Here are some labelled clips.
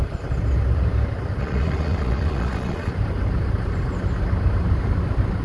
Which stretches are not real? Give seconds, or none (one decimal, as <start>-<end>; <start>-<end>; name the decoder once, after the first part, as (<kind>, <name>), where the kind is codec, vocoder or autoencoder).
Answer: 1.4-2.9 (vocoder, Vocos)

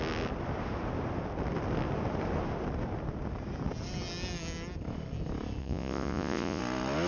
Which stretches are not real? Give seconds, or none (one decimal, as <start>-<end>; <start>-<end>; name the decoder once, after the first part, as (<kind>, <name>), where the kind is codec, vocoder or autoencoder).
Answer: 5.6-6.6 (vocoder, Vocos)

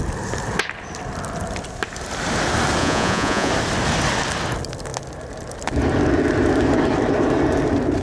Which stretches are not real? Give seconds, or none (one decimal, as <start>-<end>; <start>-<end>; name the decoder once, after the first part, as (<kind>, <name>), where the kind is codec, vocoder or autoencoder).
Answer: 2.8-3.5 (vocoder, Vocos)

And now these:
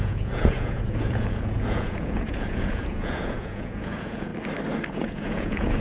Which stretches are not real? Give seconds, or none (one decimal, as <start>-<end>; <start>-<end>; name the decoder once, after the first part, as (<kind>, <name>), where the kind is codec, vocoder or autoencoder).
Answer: 0.0-4.3 (vocoder, Vocos); 4.9-5.8